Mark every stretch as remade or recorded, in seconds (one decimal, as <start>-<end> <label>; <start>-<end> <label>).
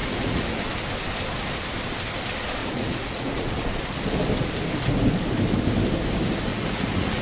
0.0-0.6 remade; 0.6-2.6 recorded; 2.6-3.8 remade; 3.8-6.5 recorded; 6.5-7.2 remade